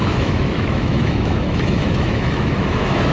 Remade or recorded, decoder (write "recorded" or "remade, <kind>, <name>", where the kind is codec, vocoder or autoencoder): remade, autoencoder, DAC-VAE